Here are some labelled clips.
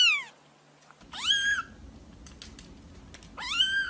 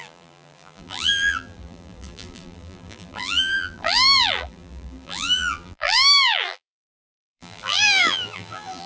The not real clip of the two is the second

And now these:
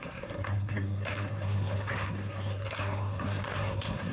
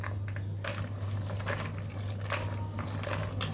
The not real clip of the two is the first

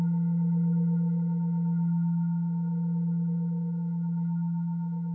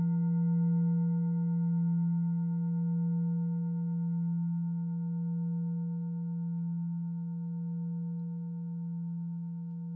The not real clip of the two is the first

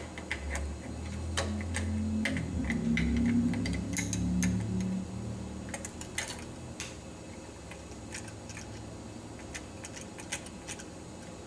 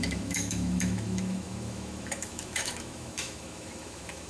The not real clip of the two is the second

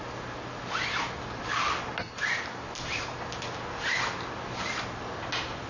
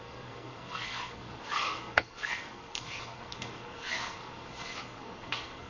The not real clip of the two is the second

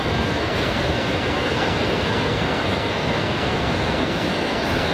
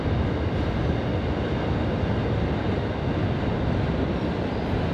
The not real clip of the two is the first